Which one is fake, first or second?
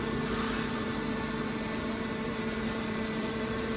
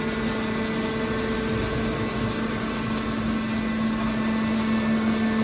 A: first